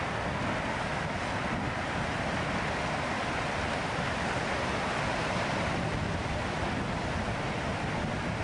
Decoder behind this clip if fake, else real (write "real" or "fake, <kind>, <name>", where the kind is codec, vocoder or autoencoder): real